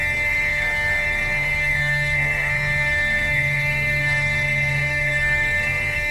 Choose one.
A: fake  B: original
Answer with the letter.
A